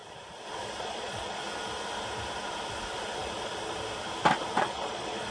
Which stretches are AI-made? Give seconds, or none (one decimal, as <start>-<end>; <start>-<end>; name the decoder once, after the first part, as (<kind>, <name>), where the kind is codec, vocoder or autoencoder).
0.8-1.4 (vocoder, Vocos); 4.6-5.3